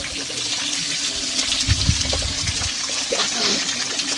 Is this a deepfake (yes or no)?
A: no